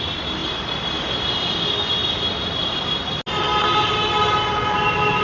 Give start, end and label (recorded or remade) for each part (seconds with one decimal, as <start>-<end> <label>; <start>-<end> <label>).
0.0-5.2 recorded